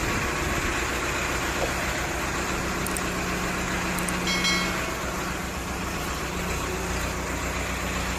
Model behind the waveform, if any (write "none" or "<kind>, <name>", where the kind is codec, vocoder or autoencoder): none